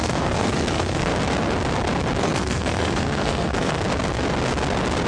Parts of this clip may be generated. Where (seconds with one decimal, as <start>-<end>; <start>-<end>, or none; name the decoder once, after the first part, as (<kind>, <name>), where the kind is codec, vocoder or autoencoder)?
0.0-1.1 (codec, SNAC); 2.2-3.8